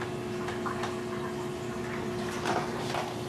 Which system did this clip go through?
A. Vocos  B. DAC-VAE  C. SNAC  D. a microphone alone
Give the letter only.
D